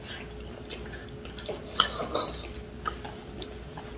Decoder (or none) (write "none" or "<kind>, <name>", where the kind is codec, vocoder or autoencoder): none